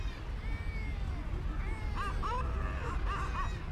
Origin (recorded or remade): recorded